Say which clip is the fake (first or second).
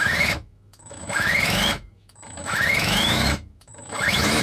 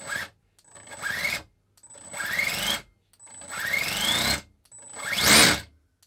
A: first